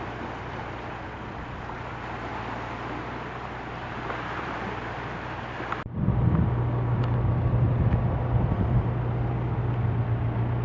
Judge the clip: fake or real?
real